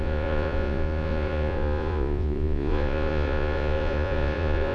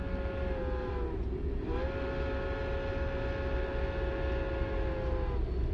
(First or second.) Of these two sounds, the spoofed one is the first